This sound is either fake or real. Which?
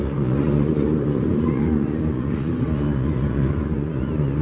fake